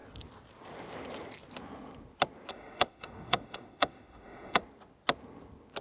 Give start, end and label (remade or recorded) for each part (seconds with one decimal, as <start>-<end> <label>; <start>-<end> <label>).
0.0-2.5 recorded; 2.5-4.6 remade; 4.6-5.8 recorded